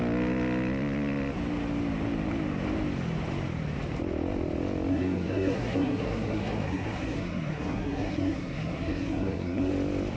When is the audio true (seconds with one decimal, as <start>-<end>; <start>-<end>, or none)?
0.0-4.9; 9.7-10.2